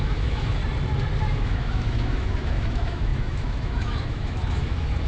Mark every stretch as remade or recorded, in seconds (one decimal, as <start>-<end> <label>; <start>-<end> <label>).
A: 0.0-0.6 remade; 0.6-1.2 recorded; 1.2-5.1 remade